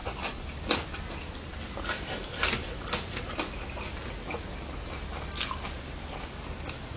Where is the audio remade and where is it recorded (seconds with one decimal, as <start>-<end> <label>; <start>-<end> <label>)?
0.0-7.0 recorded